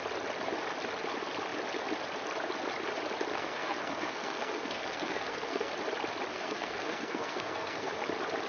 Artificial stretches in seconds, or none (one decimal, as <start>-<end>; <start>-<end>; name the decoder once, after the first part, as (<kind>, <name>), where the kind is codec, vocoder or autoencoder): 3.3-5.7 (codec, SNAC); 6.3-7.9